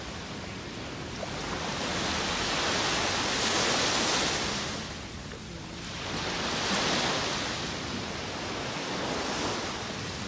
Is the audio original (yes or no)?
yes